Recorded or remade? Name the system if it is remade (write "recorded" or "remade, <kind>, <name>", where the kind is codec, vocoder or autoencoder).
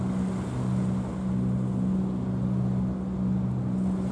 recorded